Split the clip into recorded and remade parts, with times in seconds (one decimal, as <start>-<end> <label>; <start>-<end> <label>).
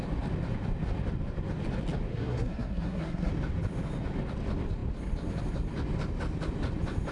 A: 0.0-2.1 recorded; 2.1-3.3 remade; 3.3-7.1 recorded